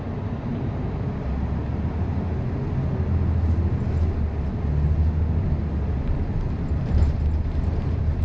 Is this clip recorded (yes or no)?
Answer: yes